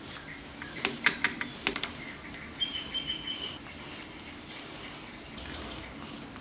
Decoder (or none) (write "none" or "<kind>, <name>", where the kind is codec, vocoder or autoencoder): none